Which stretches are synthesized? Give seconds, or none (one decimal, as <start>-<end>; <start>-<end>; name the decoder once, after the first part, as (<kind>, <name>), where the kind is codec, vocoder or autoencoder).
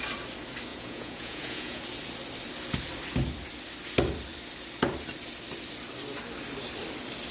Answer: 0.7-1.8 (vocoder, Vocos)